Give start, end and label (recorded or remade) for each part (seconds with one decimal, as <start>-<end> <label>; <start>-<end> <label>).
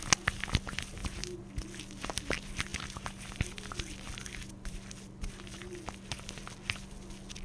0.0-7.4 recorded